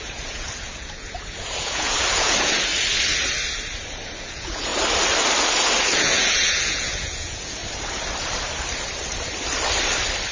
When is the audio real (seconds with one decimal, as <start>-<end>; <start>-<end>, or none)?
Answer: 2.7-4.2; 4.7-6.0; 7.6-10.3